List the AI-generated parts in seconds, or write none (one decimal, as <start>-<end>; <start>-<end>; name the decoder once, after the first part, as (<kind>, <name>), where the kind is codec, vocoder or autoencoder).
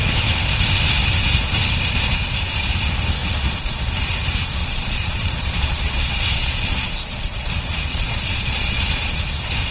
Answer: 3.2-3.8 (vocoder, Vocos); 4.6-7.5; 7.9-9.2